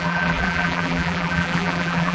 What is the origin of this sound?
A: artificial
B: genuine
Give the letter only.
A